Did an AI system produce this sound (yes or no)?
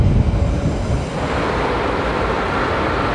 yes